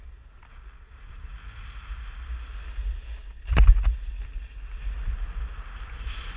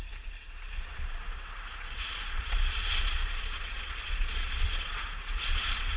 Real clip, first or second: first